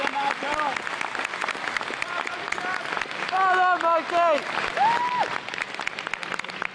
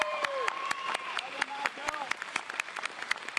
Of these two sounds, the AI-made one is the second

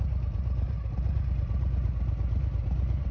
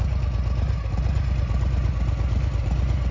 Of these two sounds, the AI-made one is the first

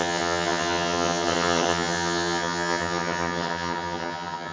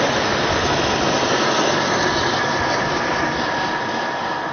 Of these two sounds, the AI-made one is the first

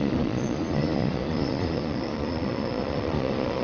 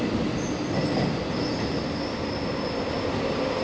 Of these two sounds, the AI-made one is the first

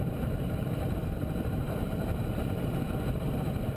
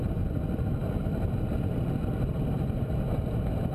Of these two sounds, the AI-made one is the first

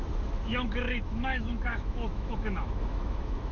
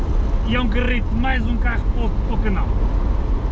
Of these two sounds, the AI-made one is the first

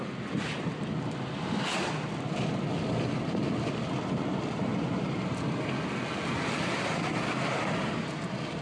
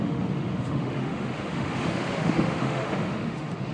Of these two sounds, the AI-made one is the second